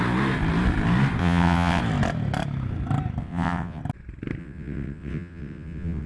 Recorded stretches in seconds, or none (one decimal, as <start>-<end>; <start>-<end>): 0.0-1.2; 1.8-3.2; 3.8-4.4